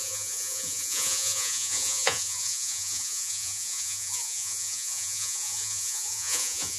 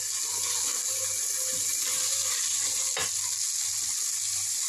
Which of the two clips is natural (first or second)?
second